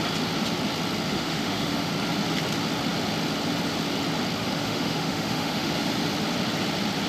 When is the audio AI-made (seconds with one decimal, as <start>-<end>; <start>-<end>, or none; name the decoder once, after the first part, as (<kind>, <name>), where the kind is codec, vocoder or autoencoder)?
1.1-1.9 (autoencoder, DAC-VAE); 4.4-5.7